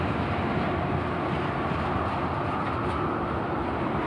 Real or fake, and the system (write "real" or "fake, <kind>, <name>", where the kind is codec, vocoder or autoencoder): real